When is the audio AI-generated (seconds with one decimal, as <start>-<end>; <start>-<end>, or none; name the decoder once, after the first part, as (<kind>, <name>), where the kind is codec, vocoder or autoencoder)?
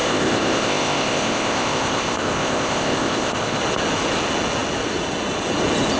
0.0-3.6 (codec, ZipCodec)